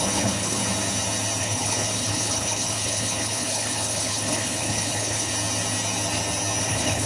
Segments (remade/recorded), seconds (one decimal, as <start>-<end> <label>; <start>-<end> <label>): 0.0-0.6 remade; 0.6-1.4 recorded; 1.4-5.3 remade; 5.3-6.6 recorded; 6.6-7.1 remade